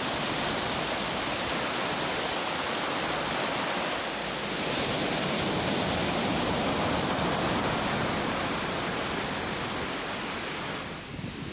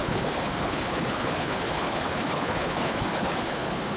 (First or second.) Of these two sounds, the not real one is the second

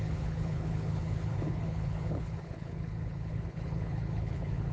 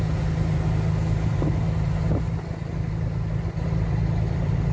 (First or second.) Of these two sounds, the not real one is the first